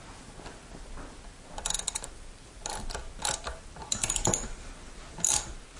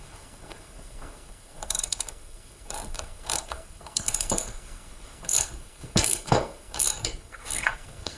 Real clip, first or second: first